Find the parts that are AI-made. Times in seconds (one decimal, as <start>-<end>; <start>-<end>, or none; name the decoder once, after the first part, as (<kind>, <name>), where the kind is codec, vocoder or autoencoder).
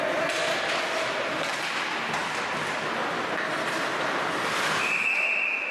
none